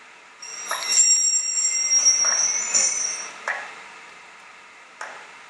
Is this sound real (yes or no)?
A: yes